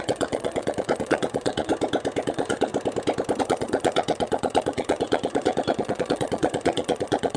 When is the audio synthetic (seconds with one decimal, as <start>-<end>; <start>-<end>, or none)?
0.0-1.7; 2.2-2.7; 3.4-7.4